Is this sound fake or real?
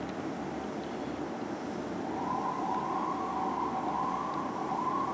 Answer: real